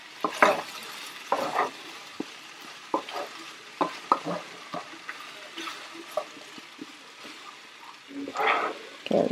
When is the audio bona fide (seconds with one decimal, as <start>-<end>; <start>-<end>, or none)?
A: 0.0-0.8; 5.1-9.3